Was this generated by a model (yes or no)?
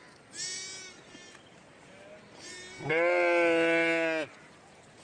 no